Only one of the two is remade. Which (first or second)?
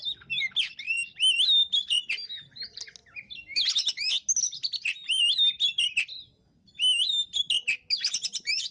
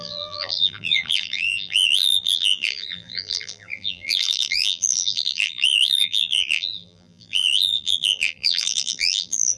second